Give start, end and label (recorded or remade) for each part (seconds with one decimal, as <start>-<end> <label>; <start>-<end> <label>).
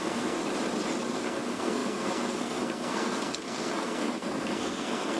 0.0-0.4 remade; 0.4-1.1 recorded; 1.1-5.2 remade